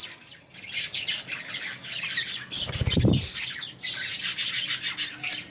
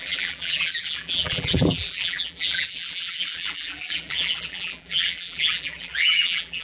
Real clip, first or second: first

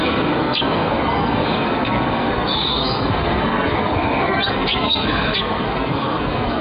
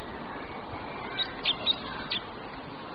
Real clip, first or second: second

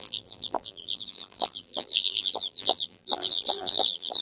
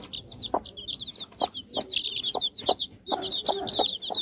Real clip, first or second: second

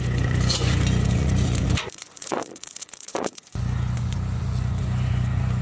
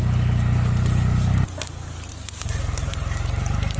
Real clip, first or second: second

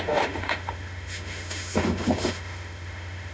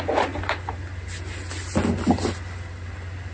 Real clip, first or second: second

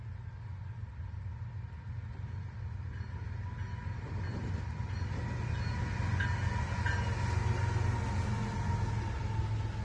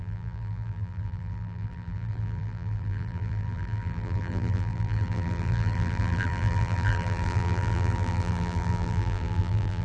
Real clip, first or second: first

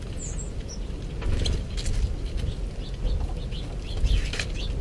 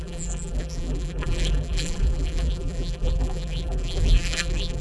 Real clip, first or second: first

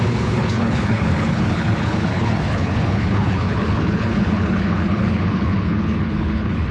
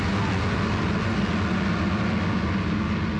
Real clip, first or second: second